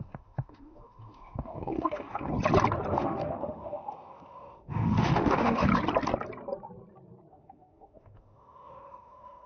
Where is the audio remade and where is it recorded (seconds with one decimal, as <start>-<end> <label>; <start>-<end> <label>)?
0.0-2.3 remade; 2.3-2.9 recorded; 2.9-5.7 remade; 5.7-7.3 recorded; 7.3-9.5 remade